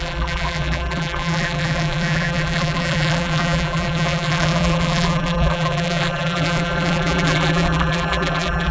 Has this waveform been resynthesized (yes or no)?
yes